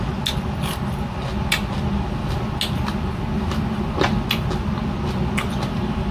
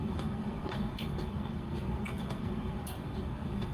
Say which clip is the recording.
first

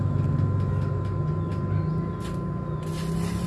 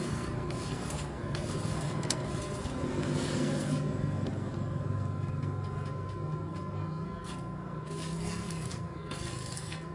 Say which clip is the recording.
first